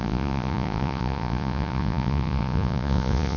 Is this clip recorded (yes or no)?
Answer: no